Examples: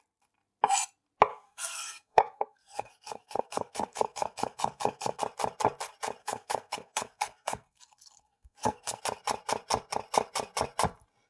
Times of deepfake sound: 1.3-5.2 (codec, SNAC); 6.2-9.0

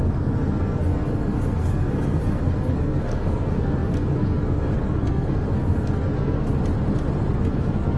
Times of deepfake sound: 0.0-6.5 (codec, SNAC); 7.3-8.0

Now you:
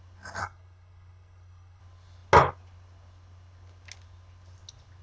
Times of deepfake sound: 0.4-1.8 (codec, SNAC)

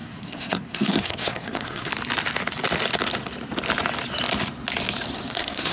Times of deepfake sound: 0.0-1.9 (codec, SNAC); 5.3-5.7

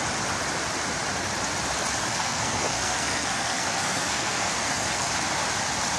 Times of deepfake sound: 2.1-5.1 (codec, SNAC)

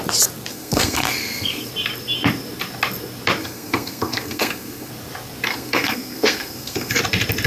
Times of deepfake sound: 0.5-1.7 (codec, SNAC); 3.4-4.9; 5.5-7.0

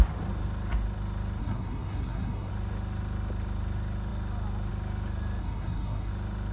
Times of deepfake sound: 1.4-2.5 (codec, SNAC); 5.4-6.1

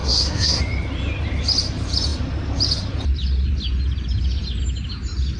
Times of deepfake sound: 0.0-0.6 (codec, SNAC)